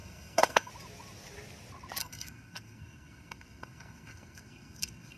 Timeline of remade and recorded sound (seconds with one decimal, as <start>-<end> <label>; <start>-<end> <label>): 0.0-0.7 remade; 0.7-2.0 recorded; 2.0-5.2 remade